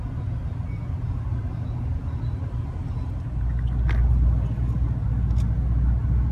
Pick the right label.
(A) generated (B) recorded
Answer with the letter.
B